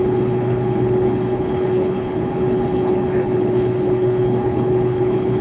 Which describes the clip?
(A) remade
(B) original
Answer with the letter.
A